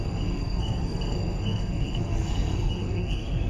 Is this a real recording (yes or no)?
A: no